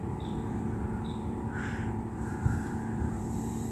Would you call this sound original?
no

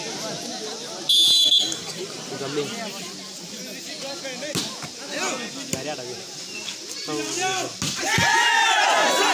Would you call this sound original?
yes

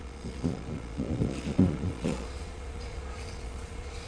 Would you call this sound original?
no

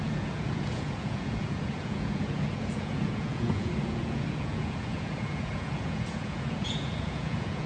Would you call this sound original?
no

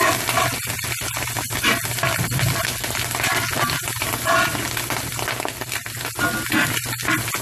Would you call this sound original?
yes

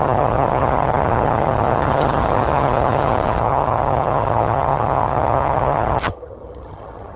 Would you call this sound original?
no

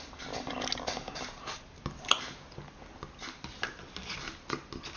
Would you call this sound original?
yes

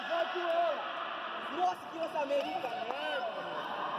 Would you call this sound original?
yes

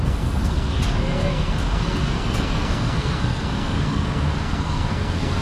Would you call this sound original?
no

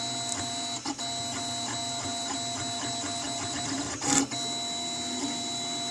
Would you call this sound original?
yes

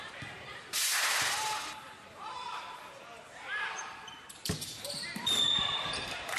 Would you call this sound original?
no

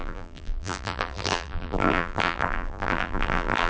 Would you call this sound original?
no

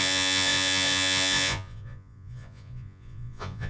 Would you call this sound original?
no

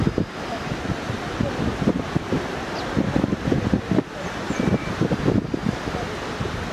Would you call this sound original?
no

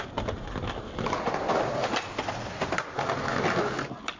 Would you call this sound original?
yes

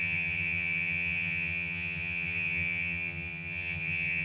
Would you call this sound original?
no